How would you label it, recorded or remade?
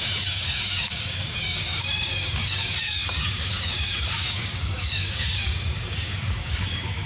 remade